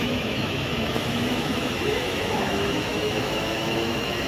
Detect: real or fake fake